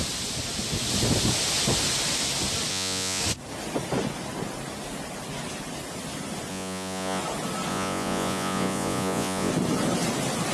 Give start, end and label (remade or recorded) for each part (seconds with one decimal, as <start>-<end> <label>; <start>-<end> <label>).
0.0-2.7 recorded; 2.7-3.2 remade; 3.2-6.5 recorded; 6.5-7.2 remade; 7.2-7.7 recorded; 7.7-9.5 remade; 9.5-10.5 recorded